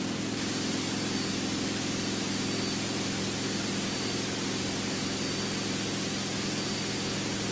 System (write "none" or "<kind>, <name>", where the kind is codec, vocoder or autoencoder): none